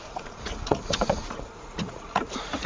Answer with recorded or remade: remade